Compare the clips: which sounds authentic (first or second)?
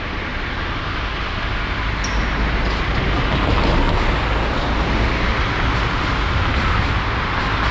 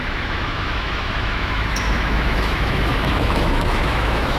first